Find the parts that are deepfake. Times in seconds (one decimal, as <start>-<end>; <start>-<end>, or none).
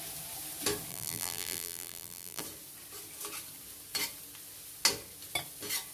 0.9-2.4